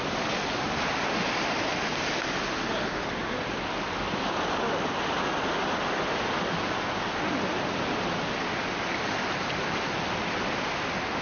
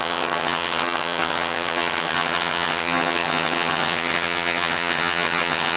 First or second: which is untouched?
first